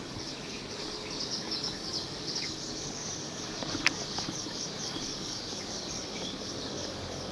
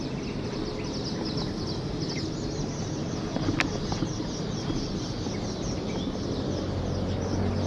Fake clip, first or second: first